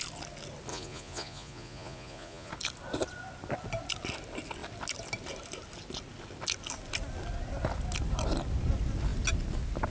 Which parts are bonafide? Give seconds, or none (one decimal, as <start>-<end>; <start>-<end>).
0.0-0.7; 2.5-9.9